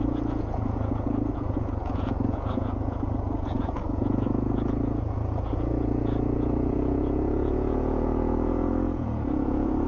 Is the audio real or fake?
fake